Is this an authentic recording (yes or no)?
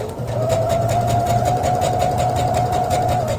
yes